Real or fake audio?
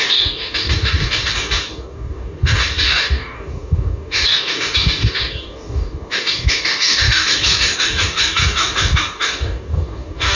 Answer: fake